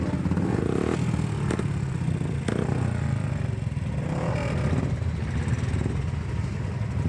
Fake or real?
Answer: real